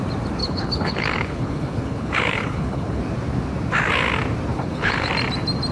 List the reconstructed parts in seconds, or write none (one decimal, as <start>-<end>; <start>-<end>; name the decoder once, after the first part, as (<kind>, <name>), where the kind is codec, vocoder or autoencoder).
0.4-3.0 (codec, HILCodec); 4.5-5.1